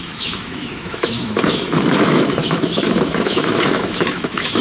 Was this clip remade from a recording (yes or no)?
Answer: yes